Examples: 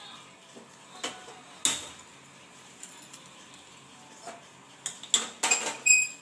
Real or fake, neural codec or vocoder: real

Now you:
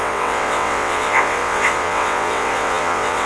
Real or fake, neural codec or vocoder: fake, vocoder, WaveNeXt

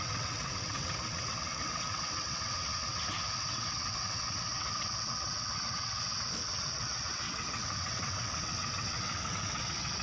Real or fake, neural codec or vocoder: fake, vocoder, WaveNeXt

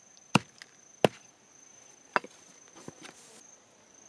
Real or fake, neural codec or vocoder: real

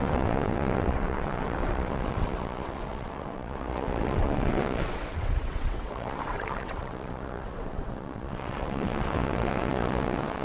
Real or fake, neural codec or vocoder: fake, vocoder, WaveNeXt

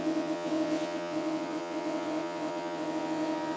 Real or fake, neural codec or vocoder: fake, vocoder, WaveNeXt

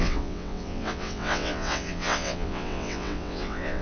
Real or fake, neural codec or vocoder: fake, vocoder, WaveNeXt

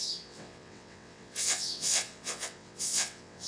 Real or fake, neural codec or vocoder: fake, vocoder, WaveNeXt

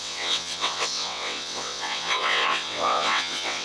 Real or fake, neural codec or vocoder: fake, vocoder, WaveNeXt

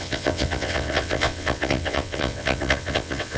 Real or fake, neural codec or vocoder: fake, vocoder, WaveNeXt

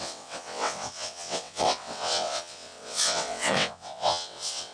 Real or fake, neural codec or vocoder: fake, vocoder, WaveNeXt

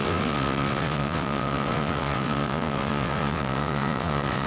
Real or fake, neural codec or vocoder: fake, vocoder, WaveNeXt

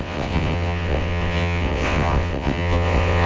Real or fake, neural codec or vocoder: fake, vocoder, WaveNeXt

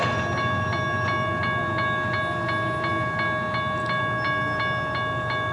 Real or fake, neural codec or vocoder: real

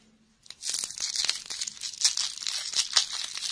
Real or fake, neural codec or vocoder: real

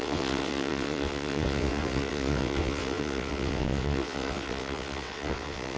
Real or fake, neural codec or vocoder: fake, vocoder, WaveNeXt